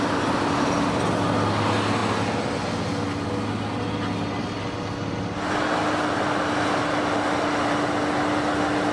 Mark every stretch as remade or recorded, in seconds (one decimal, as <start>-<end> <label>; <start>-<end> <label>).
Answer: 0.0-8.9 recorded